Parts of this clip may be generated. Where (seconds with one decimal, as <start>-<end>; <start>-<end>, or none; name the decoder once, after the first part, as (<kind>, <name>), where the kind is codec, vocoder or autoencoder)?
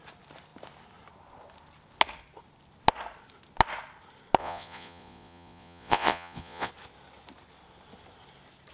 4.4-6.7 (vocoder, Vocos)